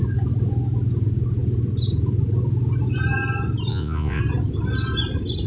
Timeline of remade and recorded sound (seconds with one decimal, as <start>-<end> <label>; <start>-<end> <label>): 0.0-3.7 recorded; 3.7-4.2 remade; 4.2-5.5 recorded